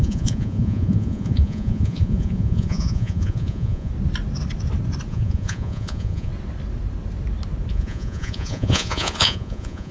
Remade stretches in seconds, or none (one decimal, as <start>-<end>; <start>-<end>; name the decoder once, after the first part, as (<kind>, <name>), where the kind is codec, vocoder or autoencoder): 0.0-3.9 (vocoder, Vocos); 5.1-6.3; 7.7-9.9